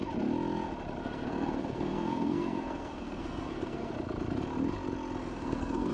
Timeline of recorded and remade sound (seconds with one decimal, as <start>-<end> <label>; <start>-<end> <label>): 0.0-1.0 recorded; 1.0-3.9 remade; 3.9-5.2 recorded; 5.2-5.9 remade